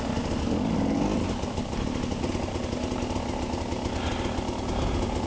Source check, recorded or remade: recorded